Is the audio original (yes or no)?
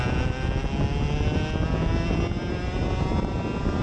yes